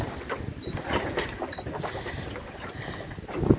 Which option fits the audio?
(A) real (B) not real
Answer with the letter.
A